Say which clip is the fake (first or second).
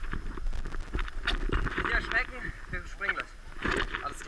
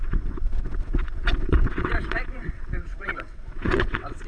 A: second